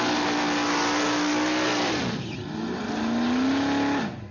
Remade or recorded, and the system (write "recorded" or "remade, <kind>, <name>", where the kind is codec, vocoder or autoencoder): recorded